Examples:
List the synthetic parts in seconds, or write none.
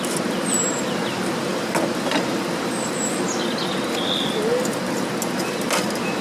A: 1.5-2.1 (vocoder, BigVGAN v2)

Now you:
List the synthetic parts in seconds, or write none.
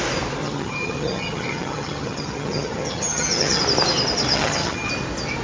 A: 0.4-3.6 (vocoder, HiFi-GAN); 4.3-4.9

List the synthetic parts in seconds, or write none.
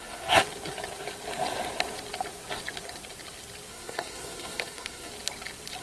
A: 0.0-0.4 (codec, SNAC); 3.7-5.1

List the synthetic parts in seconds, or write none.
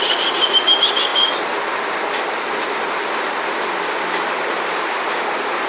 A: none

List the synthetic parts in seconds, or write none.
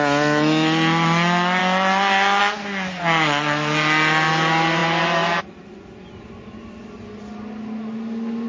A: none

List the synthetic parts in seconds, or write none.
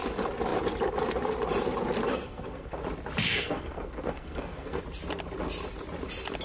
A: 2.1-2.8 (codec, SNAC); 3.2-4.8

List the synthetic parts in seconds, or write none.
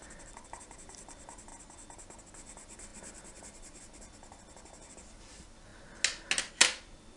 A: none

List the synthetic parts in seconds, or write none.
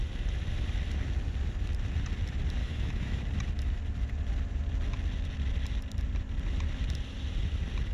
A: 2.6-3.2 (autoencoder, DAC-VAE)